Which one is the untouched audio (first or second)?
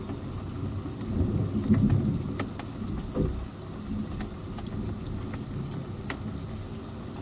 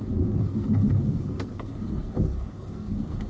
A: first